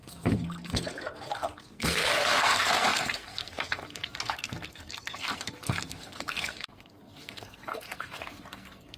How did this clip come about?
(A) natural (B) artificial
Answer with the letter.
B